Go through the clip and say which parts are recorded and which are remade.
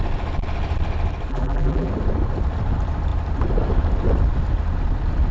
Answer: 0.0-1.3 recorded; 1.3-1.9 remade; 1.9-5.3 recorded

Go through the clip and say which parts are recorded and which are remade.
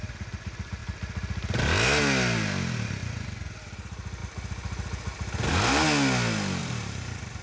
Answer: 0.0-6.6 recorded; 6.6-7.4 remade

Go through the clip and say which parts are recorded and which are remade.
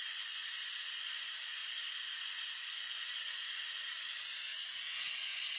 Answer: 0.0-5.6 recorded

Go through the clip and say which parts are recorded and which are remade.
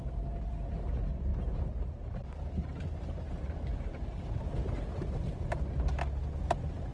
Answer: 0.0-1.3 recorded; 1.3-5.4 remade; 5.4-6.9 recorded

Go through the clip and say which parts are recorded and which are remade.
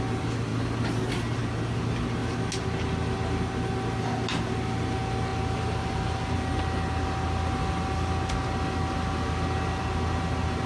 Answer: 0.0-10.7 recorded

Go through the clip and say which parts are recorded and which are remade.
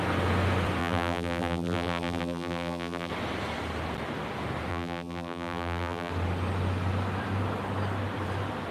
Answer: 0.0-0.8 recorded; 0.8-3.1 remade; 3.1-4.7 recorded; 4.7-6.1 remade; 6.1-8.7 recorded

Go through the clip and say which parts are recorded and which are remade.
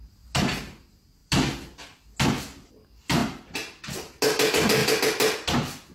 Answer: 0.0-5.9 recorded